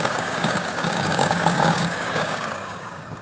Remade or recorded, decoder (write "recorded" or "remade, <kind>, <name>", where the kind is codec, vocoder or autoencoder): remade, codec, DAC